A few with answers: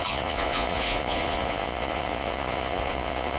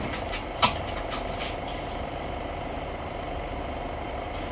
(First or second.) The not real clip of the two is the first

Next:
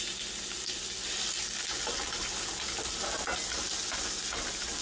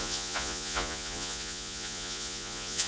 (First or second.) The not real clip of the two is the second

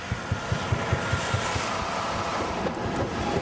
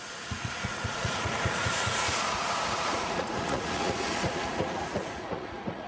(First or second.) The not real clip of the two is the second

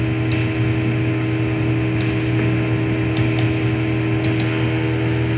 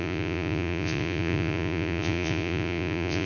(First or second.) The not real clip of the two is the second